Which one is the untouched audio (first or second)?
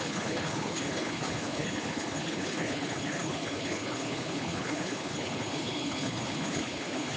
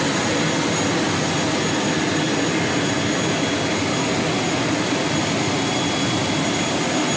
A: second